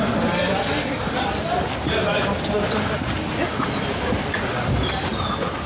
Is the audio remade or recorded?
recorded